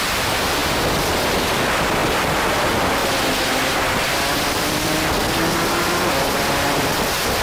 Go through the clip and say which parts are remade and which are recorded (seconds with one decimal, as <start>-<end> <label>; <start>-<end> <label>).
0.0-2.0 remade; 2.0-2.5 recorded; 2.5-3.0 remade; 3.0-3.5 recorded; 3.5-5.2 remade; 5.2-6.1 recorded; 6.1-7.4 remade